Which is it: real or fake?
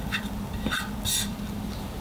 real